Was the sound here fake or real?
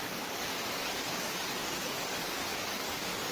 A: fake